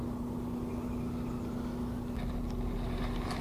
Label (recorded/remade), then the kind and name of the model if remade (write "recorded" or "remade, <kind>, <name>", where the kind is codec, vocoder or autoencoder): recorded